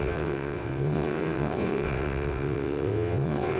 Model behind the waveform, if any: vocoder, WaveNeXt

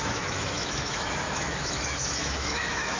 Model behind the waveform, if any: autoencoder, DAC-VAE